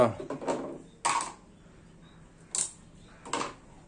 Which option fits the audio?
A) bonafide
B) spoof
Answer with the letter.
A